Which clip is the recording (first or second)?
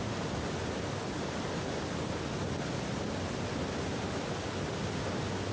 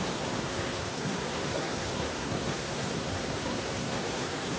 first